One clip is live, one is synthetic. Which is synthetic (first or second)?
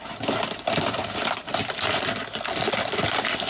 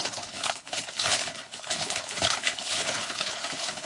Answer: second